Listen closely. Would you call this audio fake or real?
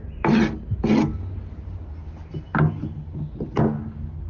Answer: real